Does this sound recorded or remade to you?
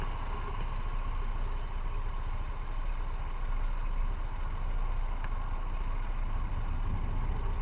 recorded